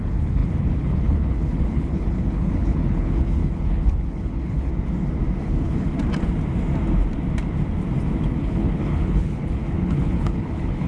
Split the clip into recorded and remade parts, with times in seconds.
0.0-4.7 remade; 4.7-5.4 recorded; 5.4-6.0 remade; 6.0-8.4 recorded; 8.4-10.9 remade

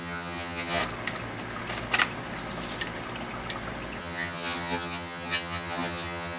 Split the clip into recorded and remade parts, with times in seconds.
0.0-0.8 remade; 0.8-4.0 recorded; 4.0-6.4 remade

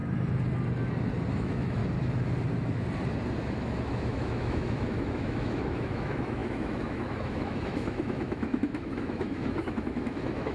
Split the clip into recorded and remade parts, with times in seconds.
0.0-1.3 recorded; 1.3-1.8 remade; 1.8-3.5 recorded; 3.5-10.5 remade

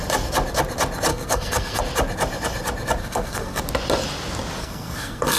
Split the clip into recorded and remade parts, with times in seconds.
0.0-1.1 recorded; 1.1-1.8 remade; 1.8-3.0 recorded; 3.0-3.6 remade; 3.6-4.6 recorded; 4.6-5.4 remade

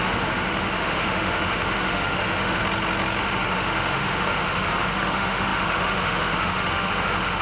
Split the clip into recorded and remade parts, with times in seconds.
0.0-2.6 remade; 2.6-3.2 recorded; 3.2-7.4 remade

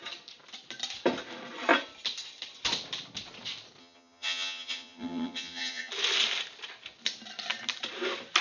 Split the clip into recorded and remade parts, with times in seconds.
0.0-3.8 recorded; 3.8-5.9 remade; 5.9-8.4 recorded

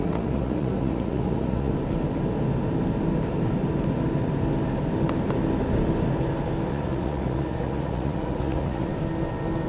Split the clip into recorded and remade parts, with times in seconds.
0.0-1.7 remade; 1.7-6.7 recorded; 6.7-8.9 remade; 8.9-9.7 recorded